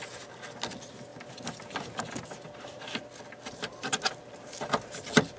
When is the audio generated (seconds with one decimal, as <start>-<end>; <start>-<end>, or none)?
none